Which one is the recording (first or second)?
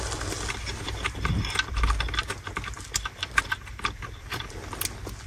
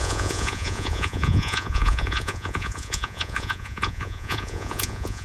first